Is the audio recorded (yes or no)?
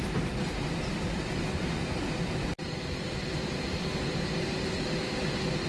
yes